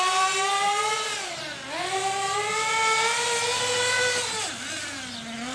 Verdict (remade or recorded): recorded